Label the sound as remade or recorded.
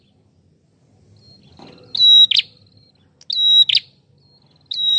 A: recorded